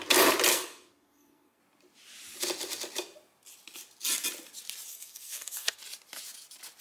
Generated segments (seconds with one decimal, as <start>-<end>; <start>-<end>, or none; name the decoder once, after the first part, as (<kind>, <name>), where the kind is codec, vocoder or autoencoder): 0.5-1.6 (codec, SNAC); 4.9-5.8